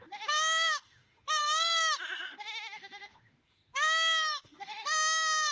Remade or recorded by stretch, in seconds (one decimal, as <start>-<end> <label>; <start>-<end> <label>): 0.0-5.5 remade